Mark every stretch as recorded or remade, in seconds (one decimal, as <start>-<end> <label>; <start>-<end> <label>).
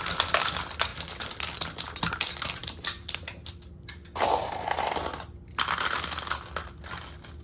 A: 0.0-7.4 recorded